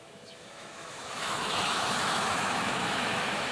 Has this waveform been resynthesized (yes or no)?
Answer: yes